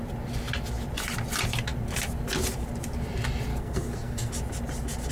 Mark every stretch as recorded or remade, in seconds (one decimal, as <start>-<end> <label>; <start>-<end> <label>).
0.0-3.5 recorded; 3.5-4.3 remade; 4.3-5.1 recorded